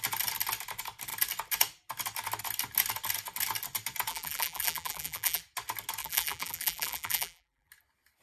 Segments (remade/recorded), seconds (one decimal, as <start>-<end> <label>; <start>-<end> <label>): 0.0-4.1 recorded; 4.1-5.4 remade; 5.4-6.0 recorded; 6.0-7.7 remade; 7.7-8.2 recorded